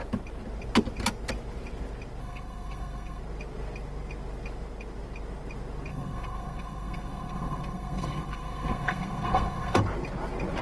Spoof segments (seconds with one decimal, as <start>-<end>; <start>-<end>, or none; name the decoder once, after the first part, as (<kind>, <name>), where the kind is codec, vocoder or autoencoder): 2.2-3.2 (codec, SNAC); 5.9-9.8